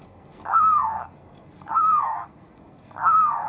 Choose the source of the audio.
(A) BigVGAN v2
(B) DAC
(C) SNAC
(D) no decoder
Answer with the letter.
C